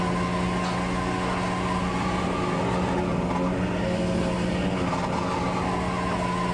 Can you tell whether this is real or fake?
real